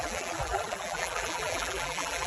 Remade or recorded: remade